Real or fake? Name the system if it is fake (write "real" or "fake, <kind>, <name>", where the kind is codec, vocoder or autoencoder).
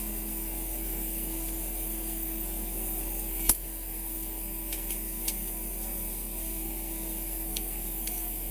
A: fake, codec, SNAC